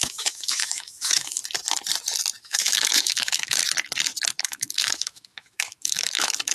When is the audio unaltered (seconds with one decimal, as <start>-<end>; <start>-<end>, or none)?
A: 1.4-2.4; 3.6-4.4